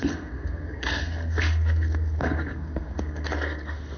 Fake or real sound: fake